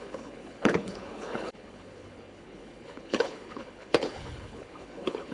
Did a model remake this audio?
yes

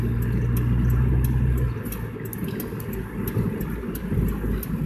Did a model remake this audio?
no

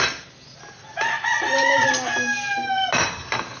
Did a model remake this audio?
no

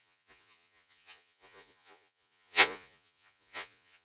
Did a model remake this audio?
yes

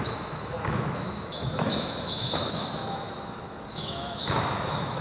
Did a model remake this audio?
yes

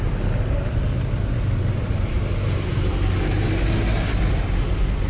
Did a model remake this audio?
no